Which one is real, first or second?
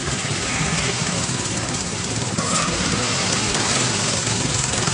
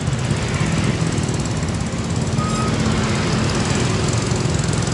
second